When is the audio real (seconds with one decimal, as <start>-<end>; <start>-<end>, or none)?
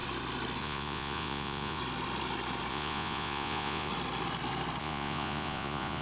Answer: 0.0-0.6; 1.8-2.7; 3.9-4.8